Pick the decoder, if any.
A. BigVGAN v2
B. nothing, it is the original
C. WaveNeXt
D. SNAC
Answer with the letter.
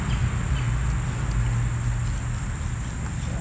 B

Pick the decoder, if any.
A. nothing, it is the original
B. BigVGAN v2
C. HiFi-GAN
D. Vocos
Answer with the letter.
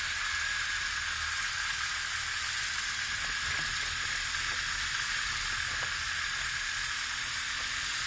A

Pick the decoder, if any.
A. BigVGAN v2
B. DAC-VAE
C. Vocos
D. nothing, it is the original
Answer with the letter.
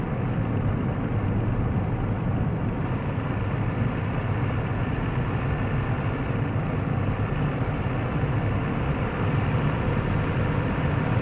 D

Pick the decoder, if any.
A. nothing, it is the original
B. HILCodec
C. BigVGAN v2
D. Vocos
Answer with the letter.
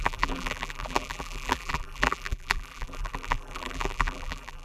C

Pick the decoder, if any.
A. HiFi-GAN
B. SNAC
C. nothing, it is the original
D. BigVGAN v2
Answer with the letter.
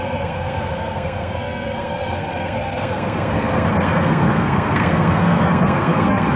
B